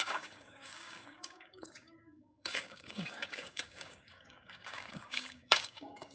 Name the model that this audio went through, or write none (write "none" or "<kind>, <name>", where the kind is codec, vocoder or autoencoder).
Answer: codec, DAC